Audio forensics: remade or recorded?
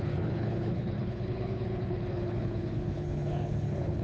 remade